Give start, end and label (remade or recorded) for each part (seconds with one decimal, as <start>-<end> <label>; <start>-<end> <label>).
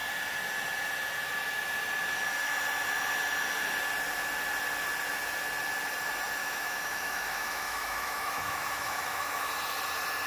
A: 0.0-6.4 recorded; 6.4-9.5 remade; 9.5-10.3 recorded